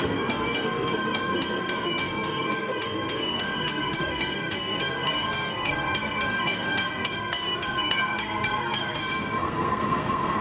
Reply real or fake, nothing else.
fake